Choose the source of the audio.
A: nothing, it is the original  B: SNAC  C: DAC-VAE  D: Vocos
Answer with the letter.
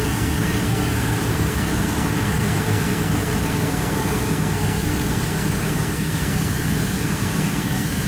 B